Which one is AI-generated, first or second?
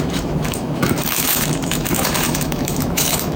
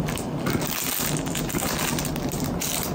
first